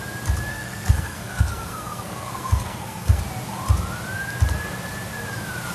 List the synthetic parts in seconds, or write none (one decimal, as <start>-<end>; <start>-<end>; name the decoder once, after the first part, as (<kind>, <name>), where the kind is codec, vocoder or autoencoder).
0.5-3.2 (codec, SNAC)